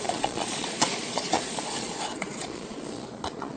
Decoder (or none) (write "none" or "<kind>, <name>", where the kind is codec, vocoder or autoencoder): vocoder, Vocos